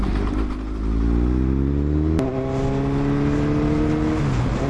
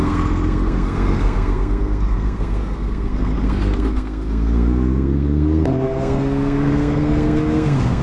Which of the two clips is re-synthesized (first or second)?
second